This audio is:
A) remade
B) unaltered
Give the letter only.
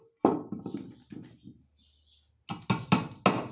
B